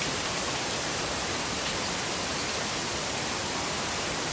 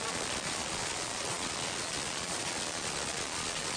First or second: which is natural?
first